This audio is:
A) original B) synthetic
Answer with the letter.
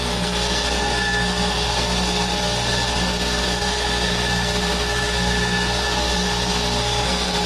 B